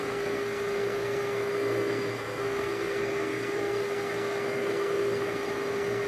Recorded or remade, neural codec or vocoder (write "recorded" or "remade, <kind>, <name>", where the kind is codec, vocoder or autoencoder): remade, codec, SNAC